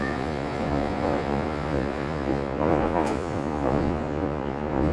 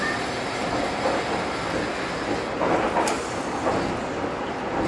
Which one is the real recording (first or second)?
second